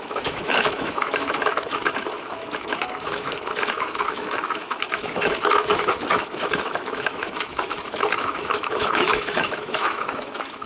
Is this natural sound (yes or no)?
no